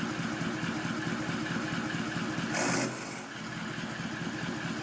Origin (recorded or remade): recorded